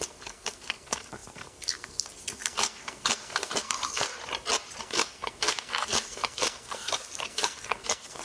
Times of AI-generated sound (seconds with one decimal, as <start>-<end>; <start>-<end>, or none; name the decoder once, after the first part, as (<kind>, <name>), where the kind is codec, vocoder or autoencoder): 0.0-4.1 (codec, SNAC); 4.8-8.2